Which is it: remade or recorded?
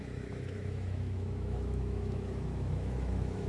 remade